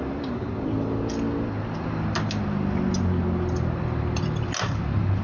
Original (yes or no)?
yes